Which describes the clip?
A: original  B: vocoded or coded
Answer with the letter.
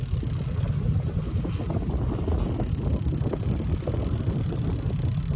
A